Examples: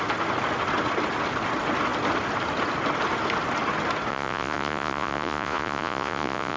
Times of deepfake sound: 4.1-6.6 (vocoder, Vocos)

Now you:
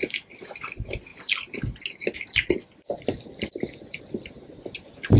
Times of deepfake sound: none

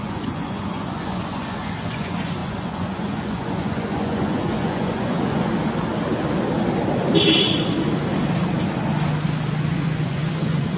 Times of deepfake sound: 0.0-5.5 (vocoder, Vocos); 9.7-10.8

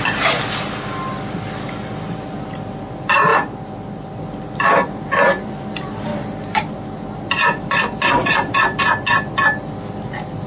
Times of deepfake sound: none

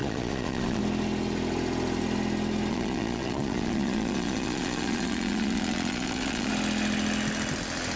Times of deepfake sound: 0.0-0.8 (vocoder, Vocos); 2.7-6.5

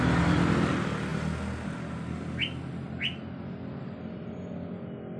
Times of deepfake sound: none

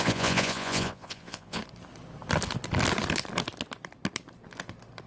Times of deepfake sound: 0.0-1.6 (vocoder, Vocos)

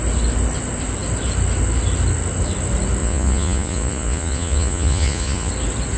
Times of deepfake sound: 3.0-5.5 (vocoder, Vocos)